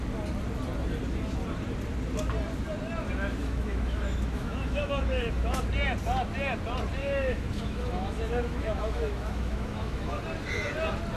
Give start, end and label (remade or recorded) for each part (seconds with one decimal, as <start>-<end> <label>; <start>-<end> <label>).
0.0-3.4 recorded; 3.4-5.6 remade; 5.6-7.0 recorded; 7.0-10.2 remade; 10.2-11.2 recorded